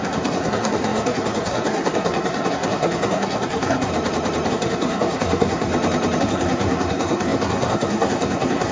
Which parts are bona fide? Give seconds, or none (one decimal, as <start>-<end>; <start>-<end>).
3.9-4.5; 5.7-6.2